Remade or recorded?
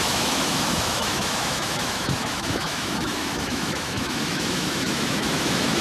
remade